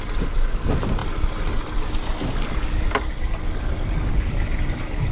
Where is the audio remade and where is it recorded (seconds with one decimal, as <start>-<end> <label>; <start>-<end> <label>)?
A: 0.0-5.1 recorded